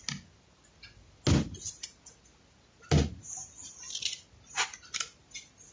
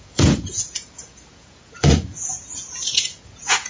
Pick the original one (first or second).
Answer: first